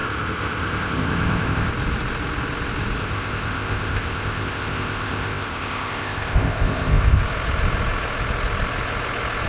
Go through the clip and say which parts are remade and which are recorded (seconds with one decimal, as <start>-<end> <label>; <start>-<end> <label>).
0.0-1.7 remade; 1.7-3.0 recorded; 3.0-7.2 remade; 7.2-9.5 recorded